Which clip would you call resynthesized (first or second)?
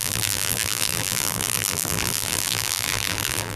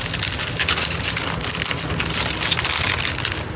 first